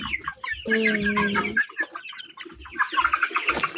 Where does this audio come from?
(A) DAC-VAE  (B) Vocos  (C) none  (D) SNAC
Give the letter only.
C